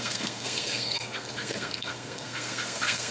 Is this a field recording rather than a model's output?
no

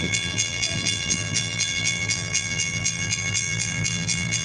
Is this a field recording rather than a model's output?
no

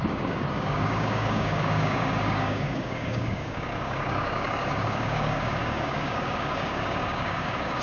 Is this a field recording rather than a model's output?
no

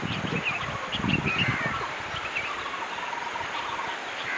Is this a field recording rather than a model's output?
yes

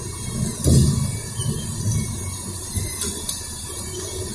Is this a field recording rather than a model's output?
yes